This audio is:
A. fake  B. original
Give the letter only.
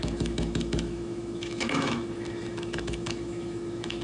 A